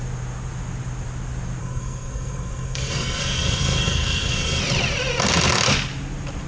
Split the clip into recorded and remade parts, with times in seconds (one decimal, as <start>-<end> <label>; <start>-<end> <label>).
0.0-1.6 recorded; 1.6-4.6 remade; 4.6-6.5 recorded